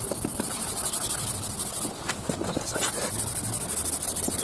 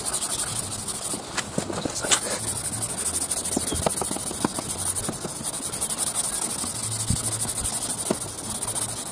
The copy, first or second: first